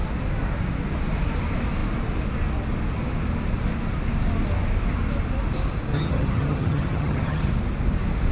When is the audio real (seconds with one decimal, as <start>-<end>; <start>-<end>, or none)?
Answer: 0.0-5.9; 7.5-8.3